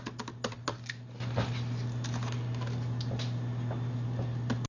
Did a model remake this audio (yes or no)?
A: no